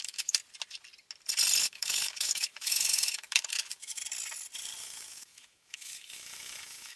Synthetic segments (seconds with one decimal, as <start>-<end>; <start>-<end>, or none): 0.0-0.4; 1.6-4.0; 4.8-7.0